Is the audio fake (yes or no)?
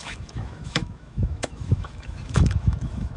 yes